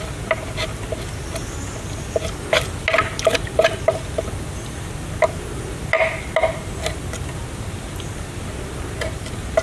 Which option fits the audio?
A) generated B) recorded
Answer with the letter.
B